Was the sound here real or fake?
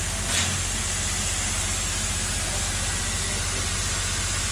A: real